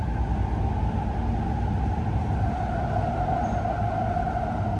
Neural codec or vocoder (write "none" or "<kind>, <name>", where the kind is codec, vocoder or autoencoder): none